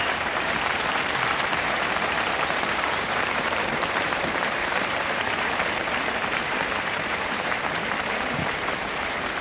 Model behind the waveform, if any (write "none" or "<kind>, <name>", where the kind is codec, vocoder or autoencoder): vocoder, BigVGAN v2